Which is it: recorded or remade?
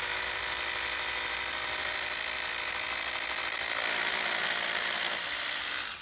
remade